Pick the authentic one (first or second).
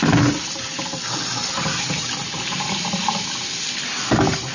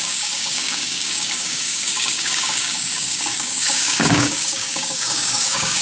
first